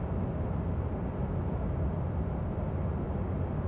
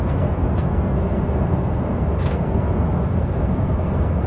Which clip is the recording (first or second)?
first